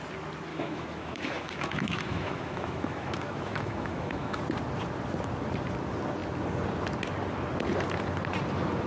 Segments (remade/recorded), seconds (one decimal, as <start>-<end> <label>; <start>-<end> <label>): 0.0-0.5 recorded; 0.5-4.4 remade; 4.4-8.9 recorded